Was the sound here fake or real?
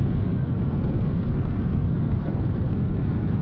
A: fake